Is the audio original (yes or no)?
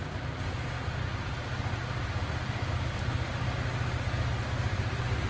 yes